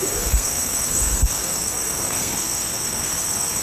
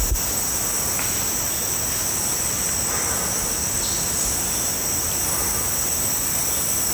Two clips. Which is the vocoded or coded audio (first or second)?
first